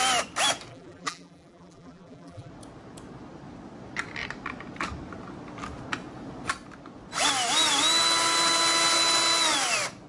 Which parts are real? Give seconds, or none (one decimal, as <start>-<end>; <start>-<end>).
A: 0.0-0.7; 2.5-10.1